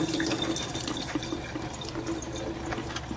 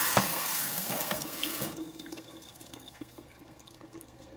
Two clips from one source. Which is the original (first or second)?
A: first